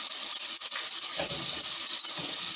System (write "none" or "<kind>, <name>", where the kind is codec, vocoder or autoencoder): none